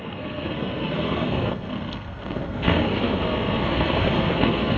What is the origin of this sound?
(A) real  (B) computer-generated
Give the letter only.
B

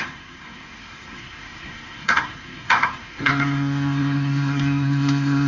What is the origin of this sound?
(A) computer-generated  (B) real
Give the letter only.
A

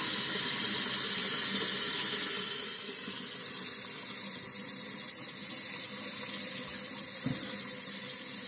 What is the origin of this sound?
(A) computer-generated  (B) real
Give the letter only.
B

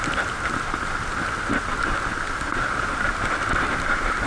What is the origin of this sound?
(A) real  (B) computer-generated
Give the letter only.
A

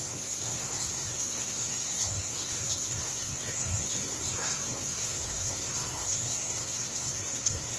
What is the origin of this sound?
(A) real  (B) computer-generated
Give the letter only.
B